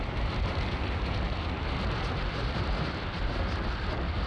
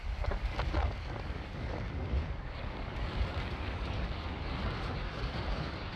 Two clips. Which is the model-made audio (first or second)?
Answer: second